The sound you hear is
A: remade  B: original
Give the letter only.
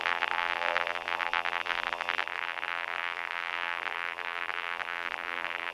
A